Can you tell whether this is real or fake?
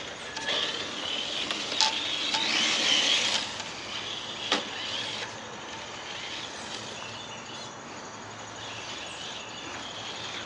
real